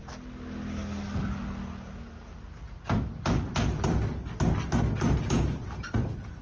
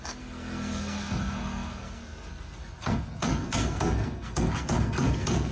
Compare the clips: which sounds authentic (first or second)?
first